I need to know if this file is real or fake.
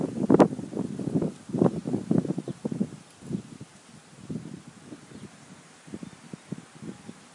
real